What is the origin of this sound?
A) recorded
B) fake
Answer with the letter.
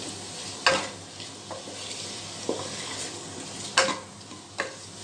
A